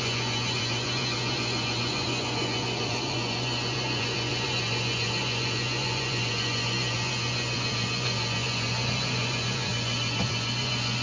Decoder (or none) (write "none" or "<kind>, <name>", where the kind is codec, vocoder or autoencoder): vocoder, Vocos